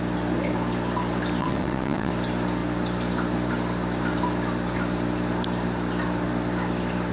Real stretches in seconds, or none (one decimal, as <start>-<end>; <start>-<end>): 0.0-1.4; 2.1-7.1